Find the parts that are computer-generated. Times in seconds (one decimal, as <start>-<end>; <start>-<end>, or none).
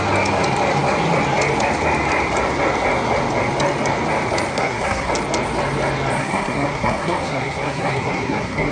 4.5-5.1; 6.2-8.7